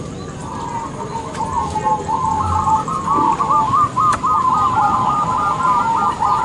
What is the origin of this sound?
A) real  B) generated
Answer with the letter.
A